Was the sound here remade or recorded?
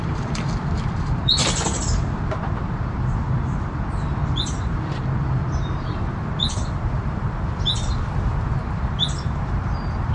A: remade